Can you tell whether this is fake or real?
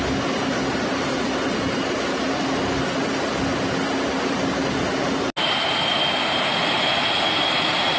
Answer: real